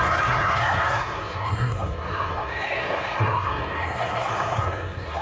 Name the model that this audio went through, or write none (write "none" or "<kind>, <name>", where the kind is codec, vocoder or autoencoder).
codec, SNAC